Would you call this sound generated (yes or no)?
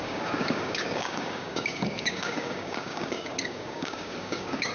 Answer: yes